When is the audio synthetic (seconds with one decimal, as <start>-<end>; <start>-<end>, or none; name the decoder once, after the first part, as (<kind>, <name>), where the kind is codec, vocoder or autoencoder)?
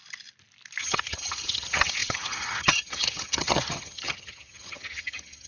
0.8-5.5 (vocoder, HiFi-GAN)